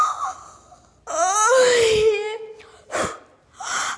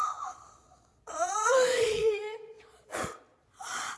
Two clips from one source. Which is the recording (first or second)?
first